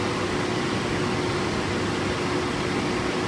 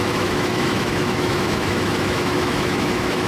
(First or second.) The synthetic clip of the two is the second